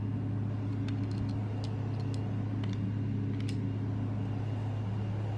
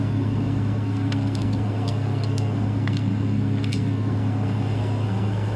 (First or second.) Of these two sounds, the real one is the first